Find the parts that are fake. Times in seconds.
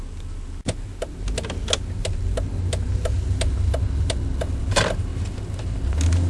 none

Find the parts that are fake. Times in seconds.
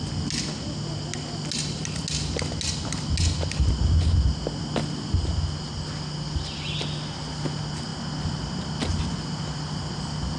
none